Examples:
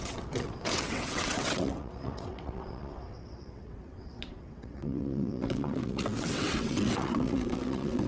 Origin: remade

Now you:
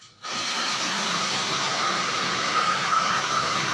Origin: remade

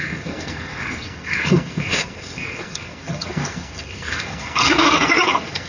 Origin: remade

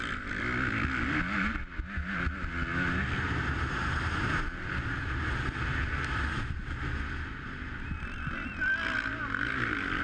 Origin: recorded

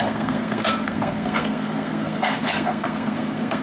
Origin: remade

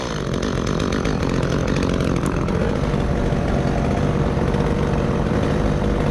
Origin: recorded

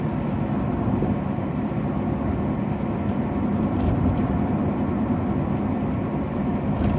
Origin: recorded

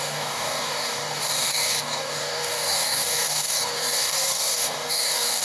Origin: remade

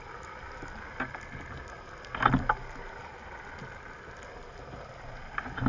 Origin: recorded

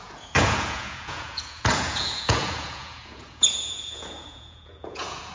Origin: remade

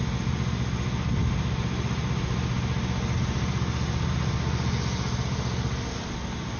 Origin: recorded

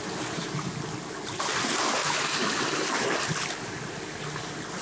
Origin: recorded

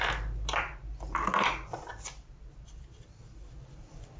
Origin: recorded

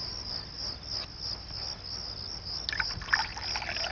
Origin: recorded